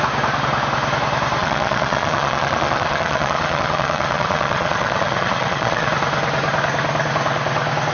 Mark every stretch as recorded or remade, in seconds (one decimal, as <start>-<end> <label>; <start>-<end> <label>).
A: 0.0-1.4 recorded; 1.4-5.9 remade; 5.9-7.9 recorded